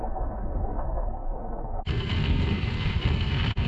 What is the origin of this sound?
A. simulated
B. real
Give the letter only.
A